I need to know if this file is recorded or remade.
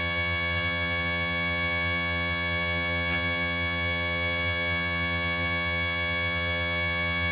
remade